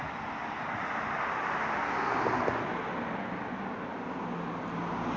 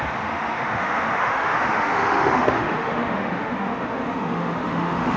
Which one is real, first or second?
first